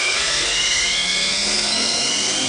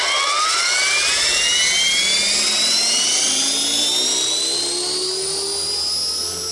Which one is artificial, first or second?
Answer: first